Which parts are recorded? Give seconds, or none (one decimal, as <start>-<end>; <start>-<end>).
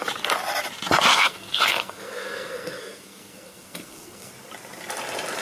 0.0-1.1; 4.3-5.4